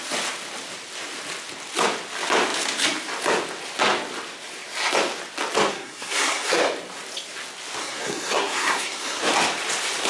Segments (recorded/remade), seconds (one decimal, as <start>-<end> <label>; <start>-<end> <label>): 0.0-5.7 recorded; 5.7-6.6 remade; 6.6-7.8 recorded; 7.8-9.2 remade; 9.2-10.1 recorded